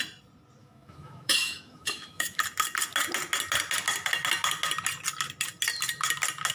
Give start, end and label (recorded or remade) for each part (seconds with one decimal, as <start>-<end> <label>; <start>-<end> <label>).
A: 0.0-0.6 recorded; 0.6-2.4 remade; 2.4-6.5 recorded